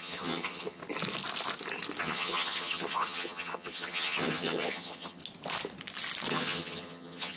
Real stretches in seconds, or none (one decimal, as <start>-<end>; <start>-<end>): 0.8-2.0; 5.2-6.3